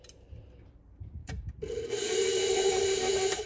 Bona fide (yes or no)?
no